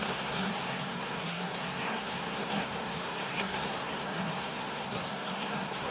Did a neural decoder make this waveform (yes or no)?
yes